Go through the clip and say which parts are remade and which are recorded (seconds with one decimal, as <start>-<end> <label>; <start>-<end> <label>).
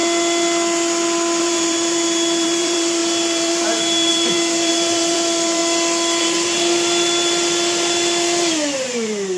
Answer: 0.0-1.4 recorded; 1.4-5.6 remade; 5.6-6.2 recorded; 6.2-9.4 remade